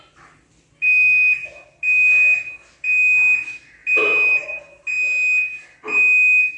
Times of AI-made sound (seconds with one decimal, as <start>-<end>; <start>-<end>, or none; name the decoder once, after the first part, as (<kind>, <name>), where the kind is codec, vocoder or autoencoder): none